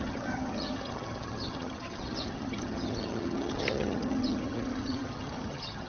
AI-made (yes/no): yes